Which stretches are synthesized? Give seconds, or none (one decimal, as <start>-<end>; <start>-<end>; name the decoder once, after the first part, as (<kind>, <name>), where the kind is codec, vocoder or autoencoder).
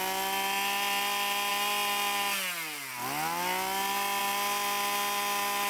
none